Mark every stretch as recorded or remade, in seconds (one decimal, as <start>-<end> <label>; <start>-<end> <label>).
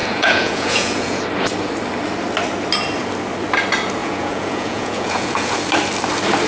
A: 0.0-1.2 remade; 1.2-4.0 recorded; 4.0-5.6 remade; 5.6-6.5 recorded